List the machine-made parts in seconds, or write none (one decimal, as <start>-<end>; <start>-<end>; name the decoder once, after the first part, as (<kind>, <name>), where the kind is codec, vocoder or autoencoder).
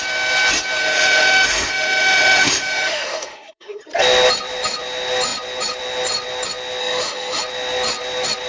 0.8-3.8 (autoencoder, DAC-VAE); 6.8-7.4